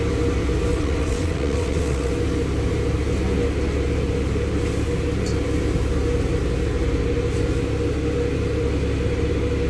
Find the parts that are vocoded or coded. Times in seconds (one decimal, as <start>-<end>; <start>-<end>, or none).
0.7-2.1